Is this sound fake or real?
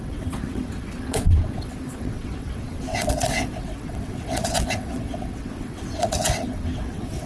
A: fake